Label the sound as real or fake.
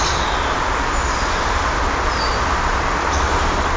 real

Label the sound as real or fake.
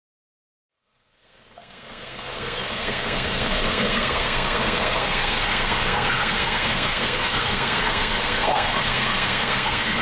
fake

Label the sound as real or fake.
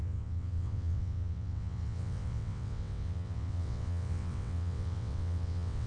fake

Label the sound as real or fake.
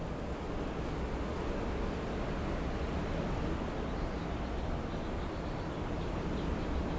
real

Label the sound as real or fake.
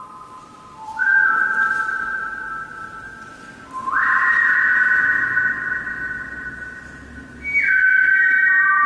real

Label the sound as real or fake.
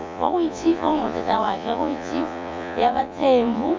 fake